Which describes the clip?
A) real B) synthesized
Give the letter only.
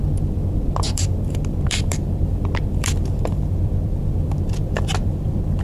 B